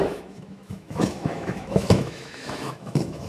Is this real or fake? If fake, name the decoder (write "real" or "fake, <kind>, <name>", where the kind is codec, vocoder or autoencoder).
fake, autoencoder, DAC-VAE